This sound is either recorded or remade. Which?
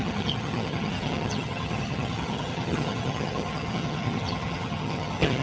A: remade